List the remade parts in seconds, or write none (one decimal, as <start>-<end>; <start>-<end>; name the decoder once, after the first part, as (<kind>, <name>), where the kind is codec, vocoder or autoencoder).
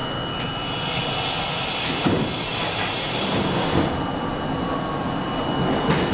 none